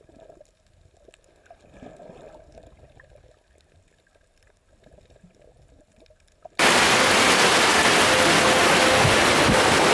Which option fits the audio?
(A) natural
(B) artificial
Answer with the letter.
A